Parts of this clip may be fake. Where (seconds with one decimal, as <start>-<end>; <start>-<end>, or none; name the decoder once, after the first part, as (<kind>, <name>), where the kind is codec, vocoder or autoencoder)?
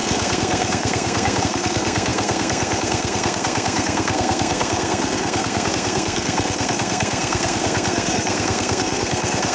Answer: 0.0-9.5 (codec, SNAC)